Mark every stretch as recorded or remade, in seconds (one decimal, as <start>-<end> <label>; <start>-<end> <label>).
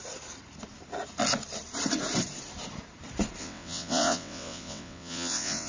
0.0-3.4 recorded; 3.4-5.7 remade